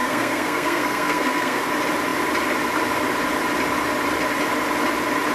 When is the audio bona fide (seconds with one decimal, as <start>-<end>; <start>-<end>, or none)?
1.6-5.3